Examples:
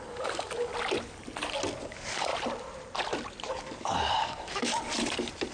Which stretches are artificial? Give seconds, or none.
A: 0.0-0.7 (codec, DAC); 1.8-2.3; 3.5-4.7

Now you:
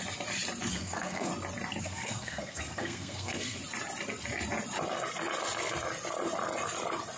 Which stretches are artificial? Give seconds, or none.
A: 0.7-1.3 (codec, SNAC); 1.8-3.6

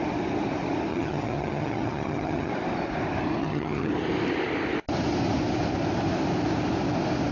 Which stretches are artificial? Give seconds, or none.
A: 0.9-2.5 (vocoder, HiFi-GAN); 3.4-3.9

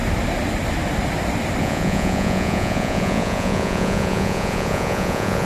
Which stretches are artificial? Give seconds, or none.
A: 1.6-5.5 (vocoder, Vocos)